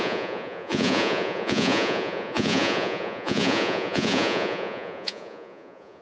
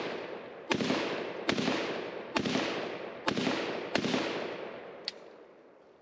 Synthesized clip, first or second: first